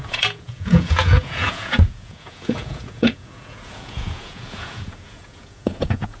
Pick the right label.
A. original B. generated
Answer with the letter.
B